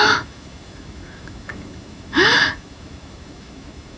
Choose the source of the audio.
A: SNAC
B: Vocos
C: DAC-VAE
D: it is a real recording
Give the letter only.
C